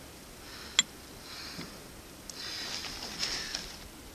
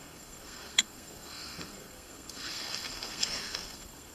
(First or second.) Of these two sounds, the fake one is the second